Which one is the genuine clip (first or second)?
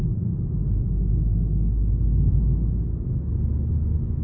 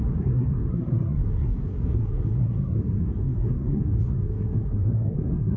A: first